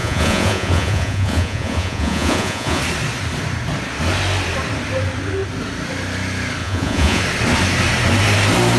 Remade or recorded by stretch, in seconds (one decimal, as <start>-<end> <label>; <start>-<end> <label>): 0.0-2.8 remade; 2.8-6.6 recorded; 6.6-7.2 remade; 7.2-8.8 recorded